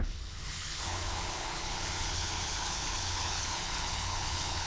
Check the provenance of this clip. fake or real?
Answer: fake